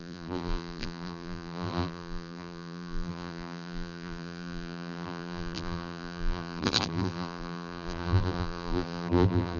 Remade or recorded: remade